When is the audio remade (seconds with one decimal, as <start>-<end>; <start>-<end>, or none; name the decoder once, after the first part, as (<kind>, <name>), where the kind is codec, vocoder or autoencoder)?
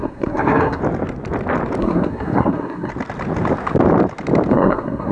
0.0-0.8 (codec, SNAC); 1.8-2.9; 4.5-5.1